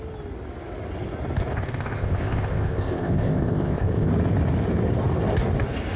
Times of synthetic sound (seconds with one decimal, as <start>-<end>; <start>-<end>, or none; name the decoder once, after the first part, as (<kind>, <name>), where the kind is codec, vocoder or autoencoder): 1.5-4.1 (codec, ZipCodec)